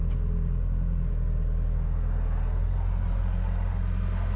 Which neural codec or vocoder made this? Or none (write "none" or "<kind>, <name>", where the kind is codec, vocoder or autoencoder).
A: none